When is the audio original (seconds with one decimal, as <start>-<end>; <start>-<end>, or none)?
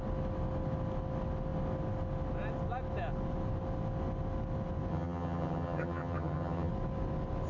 0.0-4.9; 6.7-7.5